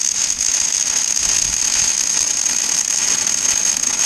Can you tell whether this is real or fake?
real